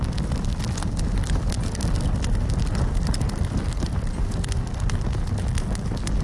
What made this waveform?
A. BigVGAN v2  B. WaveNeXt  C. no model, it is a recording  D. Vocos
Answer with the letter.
C